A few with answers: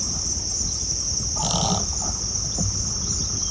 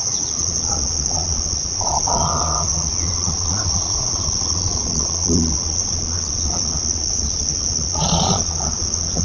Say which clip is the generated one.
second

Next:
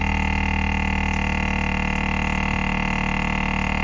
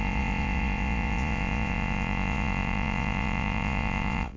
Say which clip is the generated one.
second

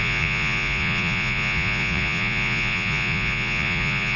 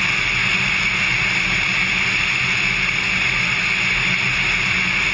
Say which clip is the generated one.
first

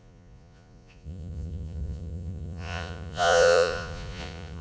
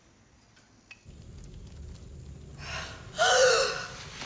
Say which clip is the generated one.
first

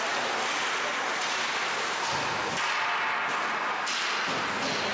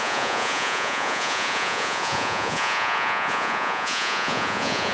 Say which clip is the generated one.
second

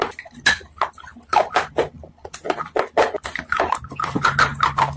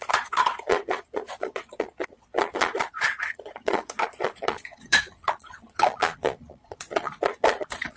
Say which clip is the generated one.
second